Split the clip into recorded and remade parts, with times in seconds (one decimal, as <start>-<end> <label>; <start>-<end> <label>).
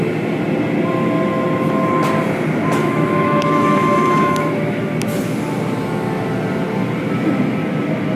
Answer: 0.0-2.8 recorded; 2.8-4.8 remade; 4.8-8.2 recorded